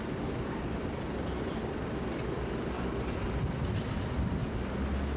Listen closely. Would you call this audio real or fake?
real